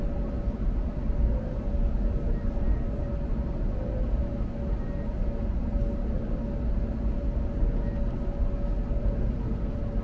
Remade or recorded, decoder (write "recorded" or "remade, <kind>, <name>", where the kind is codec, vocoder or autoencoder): recorded